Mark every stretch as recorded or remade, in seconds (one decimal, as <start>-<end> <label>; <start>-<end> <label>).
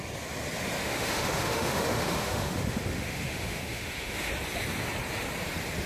0.0-0.8 recorded; 0.8-4.3 remade; 4.3-5.9 recorded